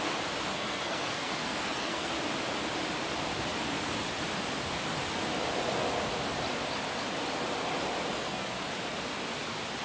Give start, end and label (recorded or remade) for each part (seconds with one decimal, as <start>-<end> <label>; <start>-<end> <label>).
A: 0.0-0.5 recorded; 0.5-2.1 remade; 2.1-8.1 recorded; 8.1-8.6 remade; 8.6-9.8 recorded

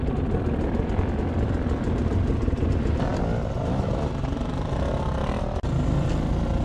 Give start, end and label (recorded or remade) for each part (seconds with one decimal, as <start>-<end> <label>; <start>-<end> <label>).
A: 0.0-6.6 recorded

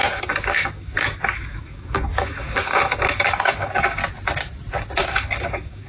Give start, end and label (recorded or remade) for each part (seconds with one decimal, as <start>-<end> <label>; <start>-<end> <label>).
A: 0.0-4.0 remade; 4.0-5.1 recorded; 5.1-5.9 remade

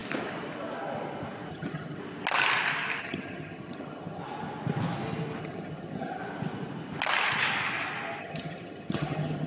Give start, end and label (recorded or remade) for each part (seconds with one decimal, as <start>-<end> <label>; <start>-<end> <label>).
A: 0.0-1.5 recorded; 1.5-2.0 remade; 2.0-3.0 recorded; 3.0-4.2 remade; 4.2-5.4 recorded; 5.4-6.2 remade; 6.2-8.2 recorded; 8.2-9.5 remade

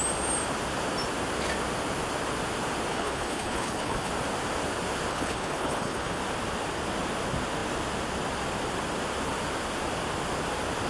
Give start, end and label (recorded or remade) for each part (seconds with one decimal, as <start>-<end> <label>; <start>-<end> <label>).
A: 0.0-2.9 recorded; 2.9-4.1 remade; 4.1-5.1 recorded; 5.1-6.2 remade; 6.2-10.9 recorded

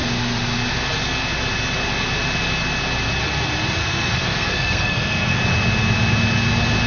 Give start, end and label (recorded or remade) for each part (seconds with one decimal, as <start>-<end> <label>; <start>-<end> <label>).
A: 0.0-3.8 recorded; 3.8-5.4 remade; 5.4-6.9 recorded

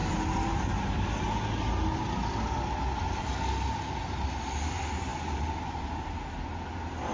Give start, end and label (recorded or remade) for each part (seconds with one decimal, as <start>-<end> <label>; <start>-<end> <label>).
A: 0.0-7.1 recorded

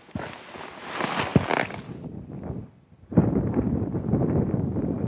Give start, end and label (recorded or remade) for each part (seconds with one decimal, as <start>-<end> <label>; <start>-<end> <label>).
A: 0.0-3.1 recorded; 3.1-5.1 remade